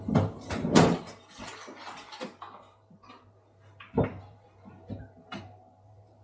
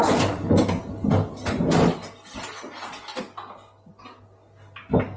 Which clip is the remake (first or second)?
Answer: first